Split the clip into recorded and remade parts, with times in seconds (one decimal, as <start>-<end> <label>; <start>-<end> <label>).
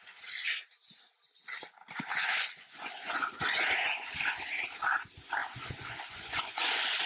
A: 0.0-2.1 recorded; 2.1-4.1 remade; 4.1-5.4 recorded; 5.4-7.1 remade